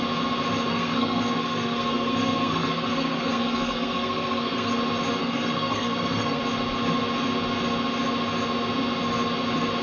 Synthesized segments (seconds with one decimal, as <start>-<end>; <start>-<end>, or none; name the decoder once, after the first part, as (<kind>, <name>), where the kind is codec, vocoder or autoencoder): 0.7-4.7 (codec, SNAC); 5.2-6.4